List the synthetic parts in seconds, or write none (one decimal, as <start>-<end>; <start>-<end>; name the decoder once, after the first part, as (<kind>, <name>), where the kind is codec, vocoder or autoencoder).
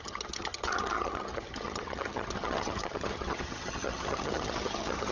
0.0-5.1 (vocoder, HiFi-GAN)